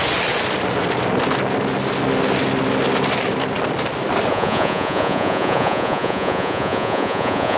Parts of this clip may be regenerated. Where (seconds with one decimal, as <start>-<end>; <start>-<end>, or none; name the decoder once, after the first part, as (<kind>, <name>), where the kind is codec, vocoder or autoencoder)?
4.3-7.6 (vocoder, Vocos)